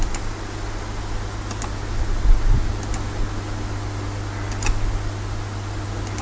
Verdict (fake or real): real